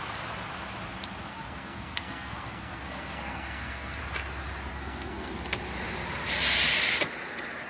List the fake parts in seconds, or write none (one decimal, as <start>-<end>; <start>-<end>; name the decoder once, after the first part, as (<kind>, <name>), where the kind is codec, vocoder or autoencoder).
1.3-4.0 (codec, SNAC); 4.7-5.3